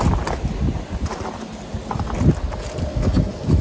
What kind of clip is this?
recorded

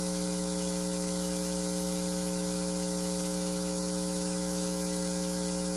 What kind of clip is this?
remade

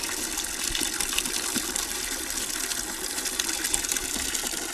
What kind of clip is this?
recorded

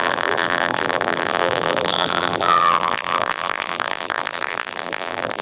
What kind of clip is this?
remade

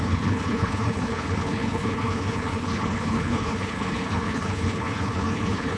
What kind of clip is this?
remade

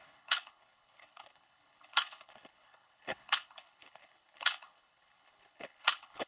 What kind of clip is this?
remade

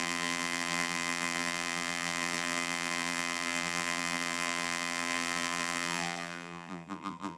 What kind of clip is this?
remade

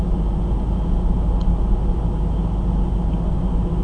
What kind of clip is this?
recorded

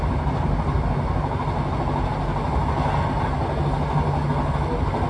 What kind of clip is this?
recorded